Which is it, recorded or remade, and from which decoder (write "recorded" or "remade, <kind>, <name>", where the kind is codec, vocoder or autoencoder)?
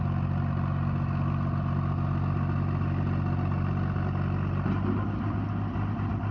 recorded